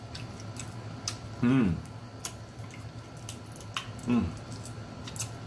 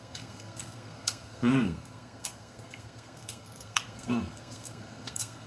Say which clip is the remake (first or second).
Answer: second